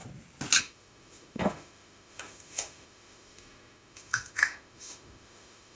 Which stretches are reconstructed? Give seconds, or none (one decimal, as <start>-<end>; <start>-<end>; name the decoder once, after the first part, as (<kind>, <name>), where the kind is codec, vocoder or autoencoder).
0.6-5.8 (autoencoder, DAC-VAE)